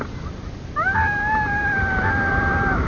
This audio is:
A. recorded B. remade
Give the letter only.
B